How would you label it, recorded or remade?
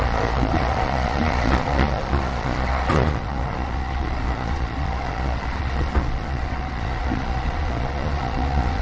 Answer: remade